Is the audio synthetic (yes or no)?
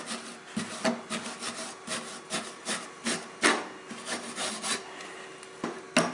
no